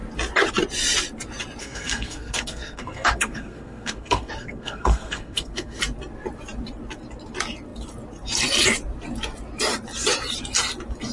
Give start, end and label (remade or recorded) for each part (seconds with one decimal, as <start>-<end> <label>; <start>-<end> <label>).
0.0-1.6 recorded; 1.6-5.8 remade; 5.8-11.1 recorded